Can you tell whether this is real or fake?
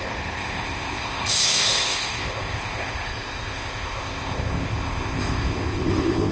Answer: fake